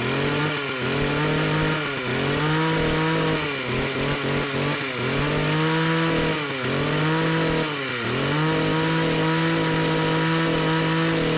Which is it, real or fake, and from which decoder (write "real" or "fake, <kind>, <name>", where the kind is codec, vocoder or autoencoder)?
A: real